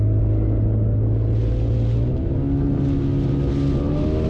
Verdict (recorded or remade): recorded